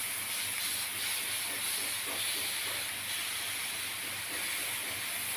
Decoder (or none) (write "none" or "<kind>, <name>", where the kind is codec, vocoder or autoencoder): none